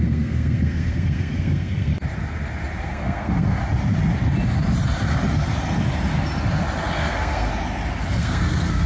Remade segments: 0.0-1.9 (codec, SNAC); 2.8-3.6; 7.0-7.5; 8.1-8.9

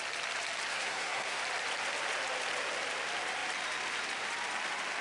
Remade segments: 0.7-1.4 (codec, SNAC)

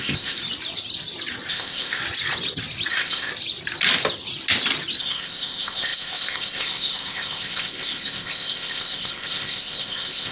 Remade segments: 0.0-0.4 (codec, ZipCodec); 1.5-2.0; 2.9-3.3; 5.0-10.3

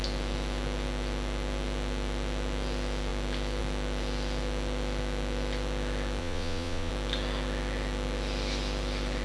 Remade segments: 6.2-6.9 (vocoder, Vocos)

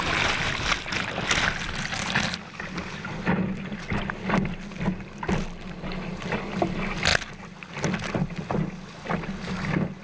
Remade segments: none

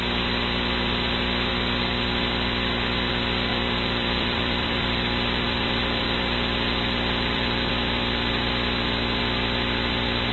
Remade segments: 3.5-7.7 (vocoder, BigVGAN v2)

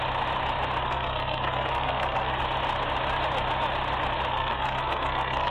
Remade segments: 0.8-2.4 (codec, SNAC); 4.3-5.5